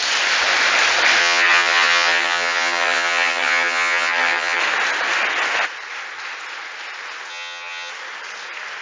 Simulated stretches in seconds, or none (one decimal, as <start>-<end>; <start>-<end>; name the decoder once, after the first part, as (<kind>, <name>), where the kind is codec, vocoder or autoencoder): 1.2-4.6 (vocoder, HiFi-GAN); 7.3-7.9